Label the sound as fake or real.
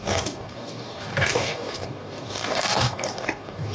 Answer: fake